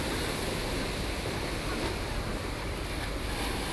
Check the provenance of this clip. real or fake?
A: real